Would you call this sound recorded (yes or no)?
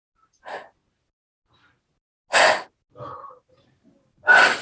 yes